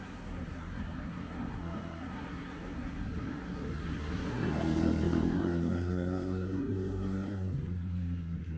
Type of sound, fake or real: fake